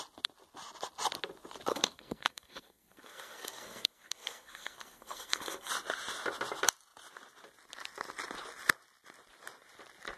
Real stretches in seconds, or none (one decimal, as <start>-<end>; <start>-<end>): 0.0-1.7; 5.7-10.2